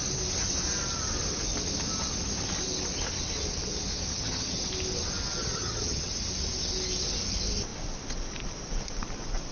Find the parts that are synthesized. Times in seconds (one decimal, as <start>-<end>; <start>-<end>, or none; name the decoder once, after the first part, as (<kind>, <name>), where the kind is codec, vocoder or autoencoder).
4.1-4.7 (vocoder, HiFi-GAN); 5.3-6.1